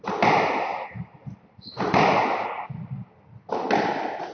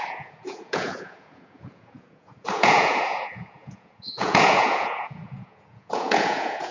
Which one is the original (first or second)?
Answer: first